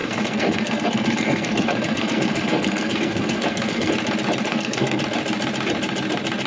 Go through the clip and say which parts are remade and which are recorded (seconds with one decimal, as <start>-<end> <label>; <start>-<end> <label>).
0.0-3.9 remade; 3.9-4.5 recorded; 4.5-5.0 remade; 5.0-6.5 recorded